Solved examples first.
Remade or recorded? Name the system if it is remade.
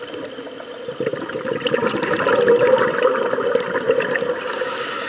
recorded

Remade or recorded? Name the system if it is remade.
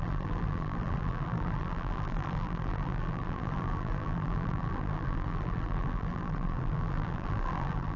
remade, vocoder, BigVGAN v2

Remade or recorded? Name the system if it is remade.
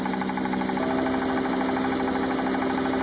recorded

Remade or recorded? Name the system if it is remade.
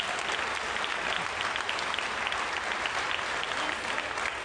recorded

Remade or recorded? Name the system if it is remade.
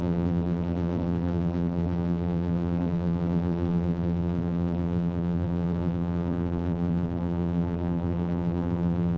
remade, vocoder, BigVGAN v2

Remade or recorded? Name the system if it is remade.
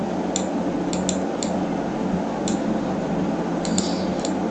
recorded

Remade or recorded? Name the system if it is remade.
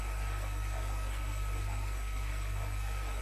remade, codec, SNAC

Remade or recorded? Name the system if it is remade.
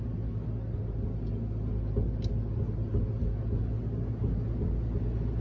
recorded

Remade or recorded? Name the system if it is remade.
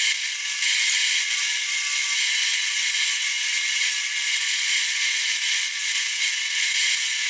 recorded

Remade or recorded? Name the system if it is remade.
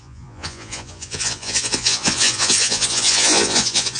remade, vocoder, Vocos